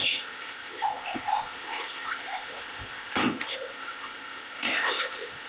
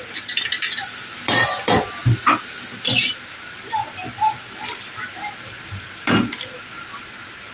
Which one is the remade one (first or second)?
first